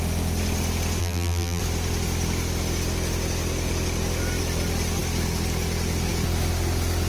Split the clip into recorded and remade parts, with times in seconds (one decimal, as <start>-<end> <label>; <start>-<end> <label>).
0.0-1.0 recorded; 1.0-1.6 remade; 1.6-7.1 recorded

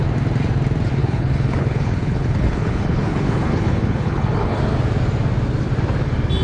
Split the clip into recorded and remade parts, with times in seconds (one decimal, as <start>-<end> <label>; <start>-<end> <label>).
0.0-1.0 recorded; 1.0-4.6 remade; 4.6-6.4 recorded

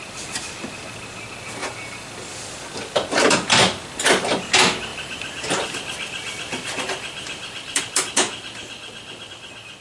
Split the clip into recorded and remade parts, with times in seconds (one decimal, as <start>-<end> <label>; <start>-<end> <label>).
0.0-4.9 recorded; 4.9-9.3 remade; 9.3-9.8 recorded

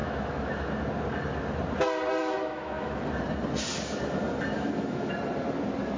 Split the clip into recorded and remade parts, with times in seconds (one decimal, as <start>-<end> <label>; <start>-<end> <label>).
0.0-0.7 remade; 0.7-2.2 recorded; 2.2-3.0 remade; 3.0-4.5 recorded; 4.5-5.1 remade; 5.1-6.0 recorded